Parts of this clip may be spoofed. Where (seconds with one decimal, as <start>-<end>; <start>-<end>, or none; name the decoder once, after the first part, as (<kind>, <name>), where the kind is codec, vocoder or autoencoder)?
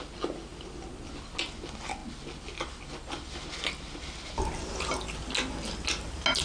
none